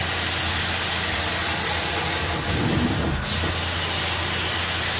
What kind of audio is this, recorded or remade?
recorded